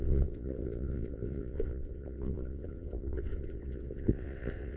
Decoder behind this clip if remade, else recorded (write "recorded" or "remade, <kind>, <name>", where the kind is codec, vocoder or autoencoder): remade, vocoder, WaveNeXt